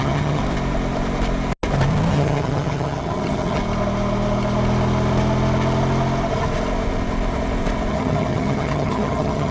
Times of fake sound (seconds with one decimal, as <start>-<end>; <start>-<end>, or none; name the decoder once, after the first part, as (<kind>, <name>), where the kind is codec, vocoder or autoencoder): 0.0-0.4 (vocoder, HiFi-GAN); 2.1-3.6; 7.9-9.5

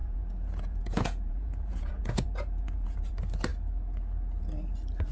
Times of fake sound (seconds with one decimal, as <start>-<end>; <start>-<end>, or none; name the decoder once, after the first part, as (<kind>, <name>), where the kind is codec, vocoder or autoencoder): 0.0-3.1 (vocoder, Vocos)